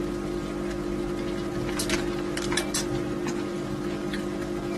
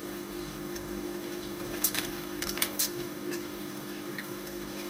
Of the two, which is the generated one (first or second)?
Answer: second